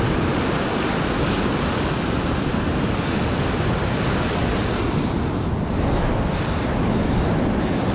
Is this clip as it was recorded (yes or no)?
yes